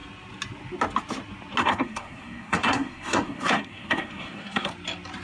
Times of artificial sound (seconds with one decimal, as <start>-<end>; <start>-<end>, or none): 1.6-4.7